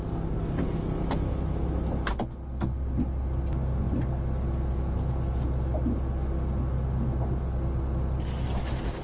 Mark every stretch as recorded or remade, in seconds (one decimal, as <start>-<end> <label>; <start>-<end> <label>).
0.0-9.0 recorded